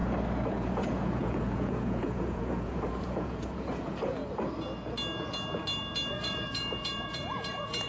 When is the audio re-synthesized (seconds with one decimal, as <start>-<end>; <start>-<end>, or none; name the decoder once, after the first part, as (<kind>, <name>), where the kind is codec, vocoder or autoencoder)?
0.5-4.2 (vocoder, Vocos); 6.1-7.9

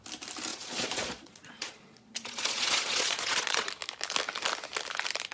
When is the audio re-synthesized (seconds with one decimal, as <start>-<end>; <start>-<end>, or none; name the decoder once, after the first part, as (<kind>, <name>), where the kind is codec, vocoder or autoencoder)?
0.5-3.7 (vocoder, Vocos)

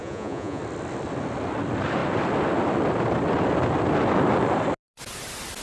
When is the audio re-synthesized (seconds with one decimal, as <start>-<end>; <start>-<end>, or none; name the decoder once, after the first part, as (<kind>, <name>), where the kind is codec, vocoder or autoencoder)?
0.0-0.6 (vocoder, Vocos)

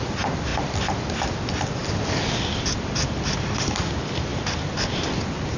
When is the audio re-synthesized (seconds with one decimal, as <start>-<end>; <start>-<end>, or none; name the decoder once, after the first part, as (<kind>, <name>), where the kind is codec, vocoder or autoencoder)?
none

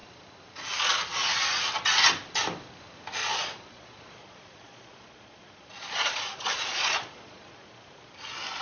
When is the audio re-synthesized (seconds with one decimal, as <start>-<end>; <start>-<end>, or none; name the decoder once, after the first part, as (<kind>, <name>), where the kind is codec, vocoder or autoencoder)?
3.2-7.7 (vocoder, Vocos)